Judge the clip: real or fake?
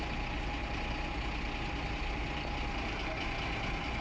real